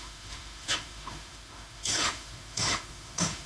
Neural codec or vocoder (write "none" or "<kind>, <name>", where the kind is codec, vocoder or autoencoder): autoencoder, DAC-VAE